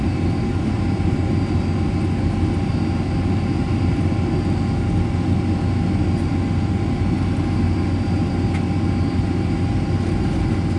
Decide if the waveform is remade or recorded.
recorded